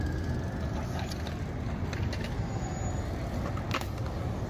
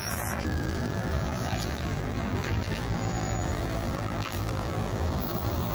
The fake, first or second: second